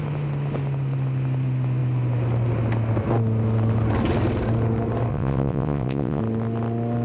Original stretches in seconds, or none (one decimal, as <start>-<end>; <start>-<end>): 0.0-5.1; 6.2-7.0